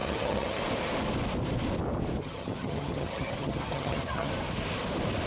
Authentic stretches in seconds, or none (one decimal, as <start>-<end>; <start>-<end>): 0.6-2.2; 4.3-5.3